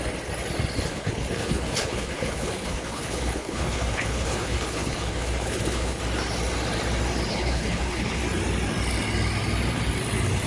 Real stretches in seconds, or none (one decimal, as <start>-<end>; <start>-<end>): 0.0-0.9; 6.0-7.3; 8.2-10.5